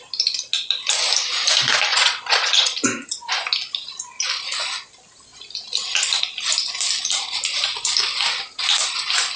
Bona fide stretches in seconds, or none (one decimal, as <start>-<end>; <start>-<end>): 0.0-1.9; 3.3-9.4